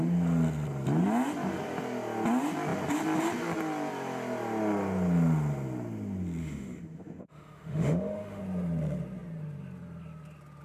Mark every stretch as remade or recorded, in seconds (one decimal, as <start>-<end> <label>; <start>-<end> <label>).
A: 0.0-6.4 recorded; 6.4-8.4 remade; 8.4-10.6 recorded